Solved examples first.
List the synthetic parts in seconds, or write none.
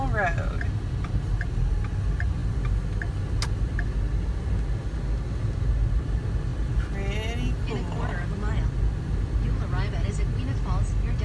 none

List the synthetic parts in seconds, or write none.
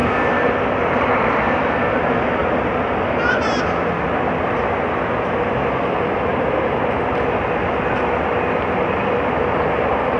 none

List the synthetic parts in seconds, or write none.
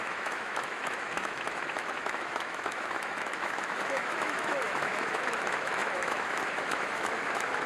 0.0-7.7 (autoencoder, DAC-VAE)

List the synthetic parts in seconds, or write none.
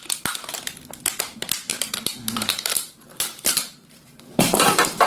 1.7-5.1 (vocoder, BigVGAN v2)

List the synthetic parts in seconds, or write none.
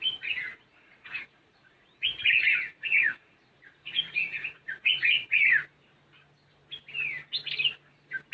0.5-5.4 (vocoder, Vocos)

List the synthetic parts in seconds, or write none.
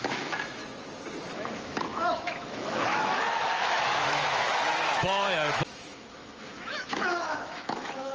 0.0-0.6 (autoencoder, DAC-VAE); 1.3-8.1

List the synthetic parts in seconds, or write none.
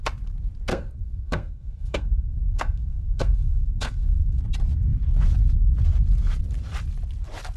0.7-4.4 (codec, SNAC)